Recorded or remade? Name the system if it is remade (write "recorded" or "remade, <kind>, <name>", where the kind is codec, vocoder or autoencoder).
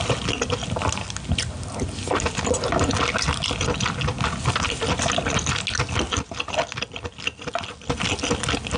recorded